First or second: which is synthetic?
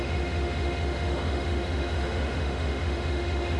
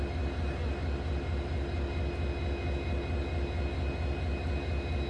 first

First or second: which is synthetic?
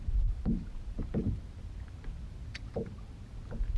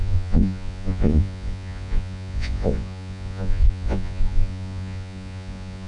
second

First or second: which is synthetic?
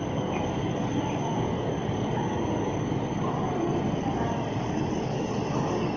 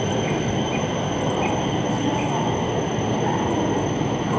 first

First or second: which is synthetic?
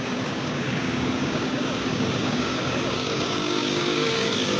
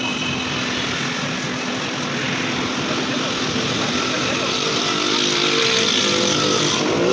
first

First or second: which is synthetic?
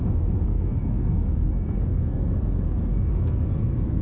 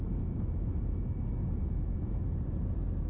first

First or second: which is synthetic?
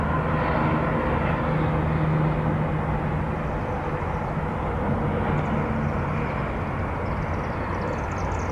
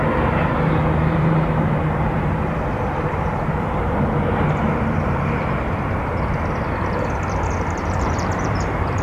second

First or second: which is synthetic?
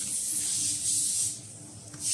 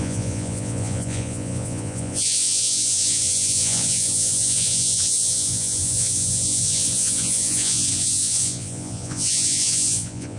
second